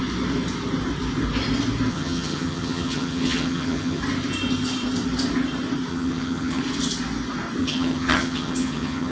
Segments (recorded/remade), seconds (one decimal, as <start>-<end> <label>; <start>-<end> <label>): 0.0-1.9 recorded; 1.9-4.0 remade; 4.0-5.9 recorded; 5.9-6.6 remade; 6.6-7.6 recorded; 7.6-9.1 remade